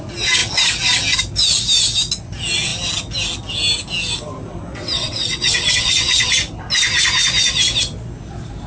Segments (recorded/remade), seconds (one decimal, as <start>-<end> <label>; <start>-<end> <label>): 0.0-4.7 recorded; 4.7-6.3 remade; 6.3-8.7 recorded